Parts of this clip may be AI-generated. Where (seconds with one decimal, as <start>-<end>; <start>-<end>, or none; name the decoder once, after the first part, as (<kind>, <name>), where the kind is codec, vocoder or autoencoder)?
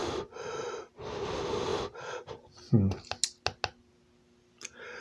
none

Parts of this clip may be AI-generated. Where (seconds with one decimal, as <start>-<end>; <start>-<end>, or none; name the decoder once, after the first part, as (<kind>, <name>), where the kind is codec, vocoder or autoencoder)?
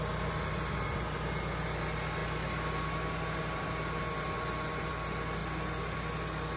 none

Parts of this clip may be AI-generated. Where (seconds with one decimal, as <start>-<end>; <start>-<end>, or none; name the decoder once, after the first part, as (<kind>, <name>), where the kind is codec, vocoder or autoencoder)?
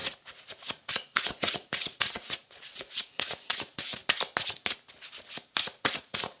0.0-4.0 (vocoder, Vocos); 5.6-6.4